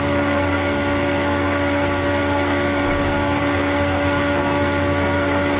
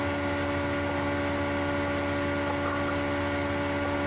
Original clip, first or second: second